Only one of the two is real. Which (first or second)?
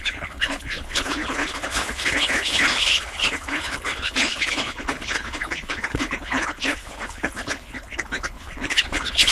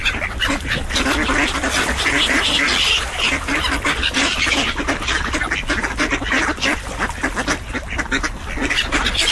second